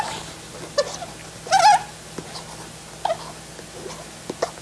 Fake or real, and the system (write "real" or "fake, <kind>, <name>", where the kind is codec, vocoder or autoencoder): real